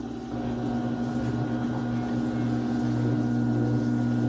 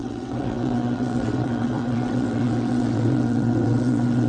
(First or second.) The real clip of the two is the first